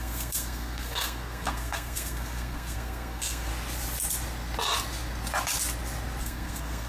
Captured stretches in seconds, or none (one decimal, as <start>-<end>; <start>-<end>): 3.5-6.2